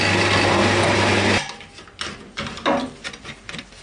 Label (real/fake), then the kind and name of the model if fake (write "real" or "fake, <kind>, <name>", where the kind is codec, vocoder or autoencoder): real